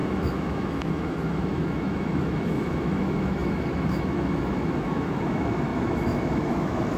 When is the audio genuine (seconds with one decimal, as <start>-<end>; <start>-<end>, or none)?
none